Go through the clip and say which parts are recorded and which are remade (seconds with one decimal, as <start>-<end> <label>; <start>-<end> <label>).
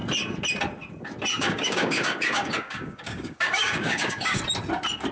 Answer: 0.0-1.3 recorded; 1.3-4.4 remade; 4.4-5.1 recorded